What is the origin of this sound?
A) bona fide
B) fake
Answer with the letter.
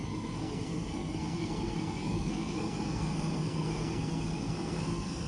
B